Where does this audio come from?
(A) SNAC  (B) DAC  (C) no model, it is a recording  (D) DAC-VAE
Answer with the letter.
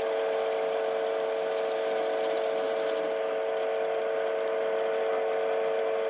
C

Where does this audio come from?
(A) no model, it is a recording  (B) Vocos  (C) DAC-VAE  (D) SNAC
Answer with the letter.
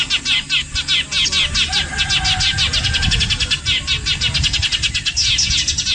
A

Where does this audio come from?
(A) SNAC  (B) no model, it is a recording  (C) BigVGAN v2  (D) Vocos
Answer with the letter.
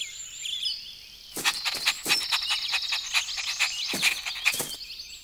B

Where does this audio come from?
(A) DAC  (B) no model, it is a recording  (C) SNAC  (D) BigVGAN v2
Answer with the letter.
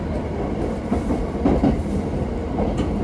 B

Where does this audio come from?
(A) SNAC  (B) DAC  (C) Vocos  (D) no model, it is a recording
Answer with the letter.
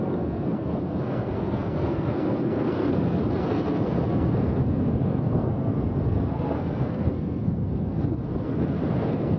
A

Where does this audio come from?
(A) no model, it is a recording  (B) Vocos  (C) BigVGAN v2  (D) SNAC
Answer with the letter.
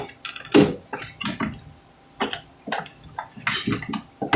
A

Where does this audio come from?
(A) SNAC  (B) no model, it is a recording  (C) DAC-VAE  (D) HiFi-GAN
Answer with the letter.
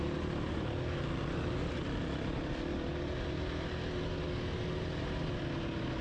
B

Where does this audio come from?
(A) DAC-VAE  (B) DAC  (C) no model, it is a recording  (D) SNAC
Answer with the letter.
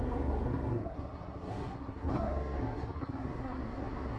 D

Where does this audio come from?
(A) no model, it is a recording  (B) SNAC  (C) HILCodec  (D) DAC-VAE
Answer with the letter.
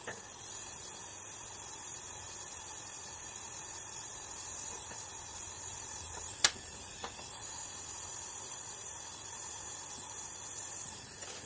A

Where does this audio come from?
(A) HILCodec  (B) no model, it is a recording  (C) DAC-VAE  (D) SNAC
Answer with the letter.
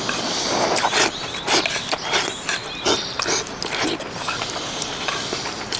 B